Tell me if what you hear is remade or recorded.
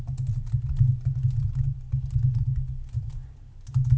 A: recorded